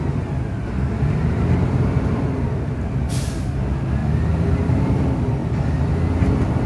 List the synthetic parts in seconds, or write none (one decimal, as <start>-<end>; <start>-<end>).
none